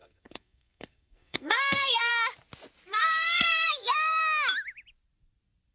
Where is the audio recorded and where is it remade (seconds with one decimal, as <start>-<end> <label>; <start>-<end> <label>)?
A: 0.0-2.1 remade; 2.1-2.9 recorded; 2.9-4.2 remade; 4.2-5.7 recorded